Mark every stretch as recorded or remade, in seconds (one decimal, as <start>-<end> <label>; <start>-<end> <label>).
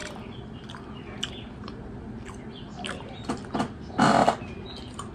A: 0.0-5.1 recorded